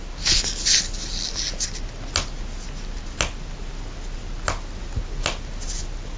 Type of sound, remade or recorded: recorded